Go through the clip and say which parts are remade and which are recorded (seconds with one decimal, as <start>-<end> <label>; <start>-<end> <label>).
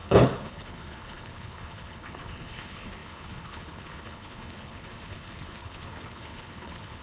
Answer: 0.0-7.0 remade